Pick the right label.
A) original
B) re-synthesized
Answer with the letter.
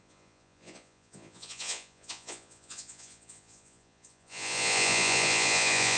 B